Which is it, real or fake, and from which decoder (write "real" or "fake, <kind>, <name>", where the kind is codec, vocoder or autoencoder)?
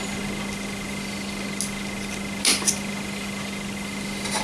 real